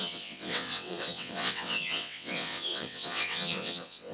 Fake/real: fake